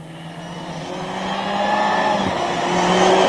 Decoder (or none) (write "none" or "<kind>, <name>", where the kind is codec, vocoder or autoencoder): none